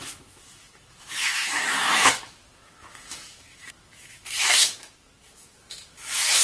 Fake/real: fake